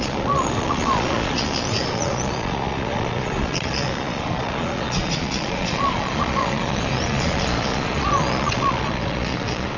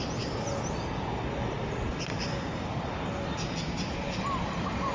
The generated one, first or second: first